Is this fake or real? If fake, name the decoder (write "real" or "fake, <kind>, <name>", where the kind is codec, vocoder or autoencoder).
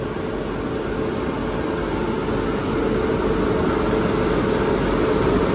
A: real